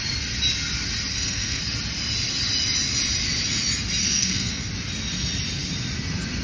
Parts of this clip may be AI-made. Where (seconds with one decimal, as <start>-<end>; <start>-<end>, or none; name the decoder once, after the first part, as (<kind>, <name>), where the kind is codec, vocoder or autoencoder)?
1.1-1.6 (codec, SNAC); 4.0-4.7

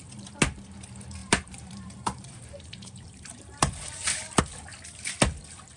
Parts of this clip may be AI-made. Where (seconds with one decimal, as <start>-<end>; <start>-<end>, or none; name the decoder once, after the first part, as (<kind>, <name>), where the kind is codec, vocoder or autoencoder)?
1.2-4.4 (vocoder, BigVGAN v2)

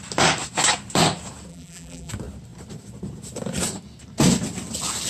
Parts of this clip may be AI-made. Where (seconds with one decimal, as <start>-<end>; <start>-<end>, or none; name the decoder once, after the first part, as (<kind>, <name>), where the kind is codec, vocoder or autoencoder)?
1.5-2.1 (vocoder, BigVGAN v2)

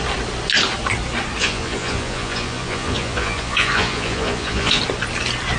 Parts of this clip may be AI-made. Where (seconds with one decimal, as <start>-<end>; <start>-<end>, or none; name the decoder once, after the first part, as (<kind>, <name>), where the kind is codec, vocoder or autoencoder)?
1.4-4.8 (vocoder, Vocos)